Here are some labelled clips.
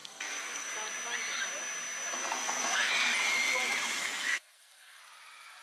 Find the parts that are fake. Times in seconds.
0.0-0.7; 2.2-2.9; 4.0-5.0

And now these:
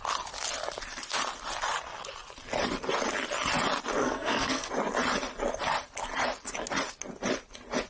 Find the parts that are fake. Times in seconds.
4.0-4.7

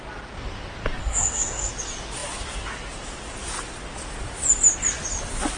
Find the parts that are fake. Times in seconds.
1.0-1.7

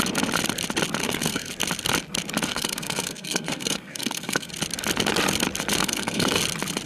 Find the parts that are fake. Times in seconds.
1.0-1.5; 2.5-4.5; 5.8-6.4

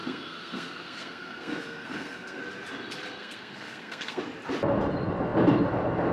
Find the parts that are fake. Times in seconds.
0.0-2.4; 3.2-4.2

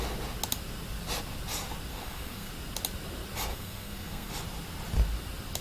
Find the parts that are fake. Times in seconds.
1.9-2.5; 3.5-4.3

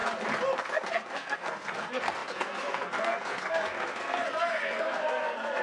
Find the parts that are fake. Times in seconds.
0.6-5.6